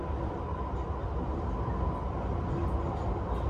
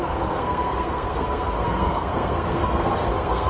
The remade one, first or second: second